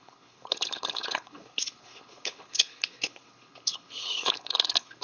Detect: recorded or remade remade